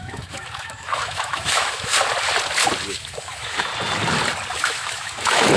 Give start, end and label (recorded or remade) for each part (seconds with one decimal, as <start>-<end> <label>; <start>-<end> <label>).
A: 0.0-1.9 remade; 1.9-2.9 recorded; 2.9-3.7 remade; 3.7-4.6 recorded; 4.6-5.6 remade